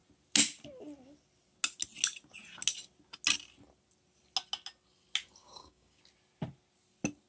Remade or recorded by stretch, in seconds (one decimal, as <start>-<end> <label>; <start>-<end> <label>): 0.0-5.4 recorded; 5.4-6.0 remade; 6.0-7.3 recorded